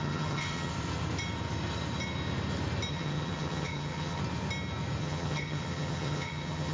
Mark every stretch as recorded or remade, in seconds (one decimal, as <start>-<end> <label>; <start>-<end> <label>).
0.0-0.7 remade; 0.7-2.9 recorded; 2.9-4.2 remade; 4.2-5.0 recorded; 5.0-6.7 remade